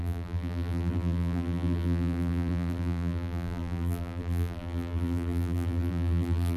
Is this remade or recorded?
remade